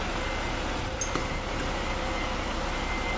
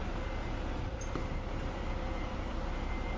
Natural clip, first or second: first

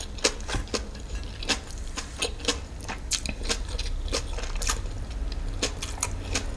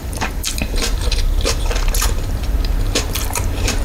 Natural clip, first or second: first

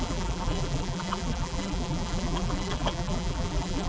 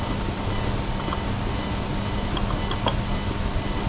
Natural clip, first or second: second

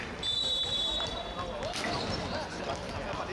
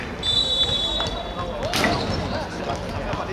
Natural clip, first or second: second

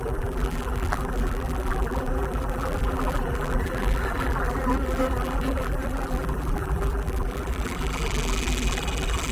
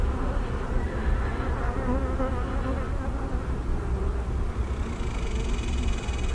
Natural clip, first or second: second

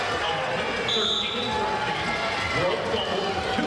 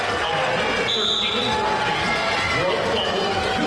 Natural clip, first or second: second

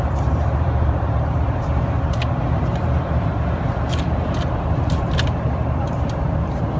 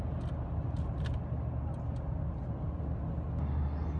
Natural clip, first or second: second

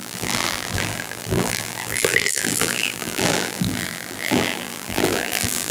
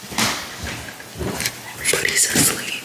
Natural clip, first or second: second